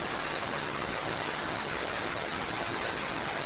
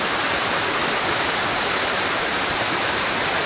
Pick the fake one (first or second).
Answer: first